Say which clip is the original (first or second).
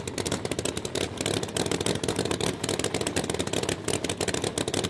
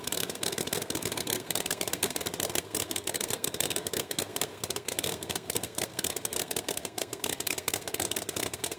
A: first